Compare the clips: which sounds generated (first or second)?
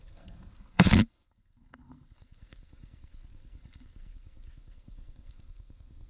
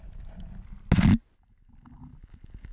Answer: first